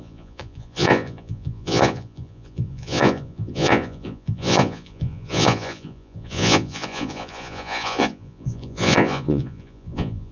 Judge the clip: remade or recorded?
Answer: remade